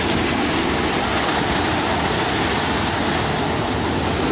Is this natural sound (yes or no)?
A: yes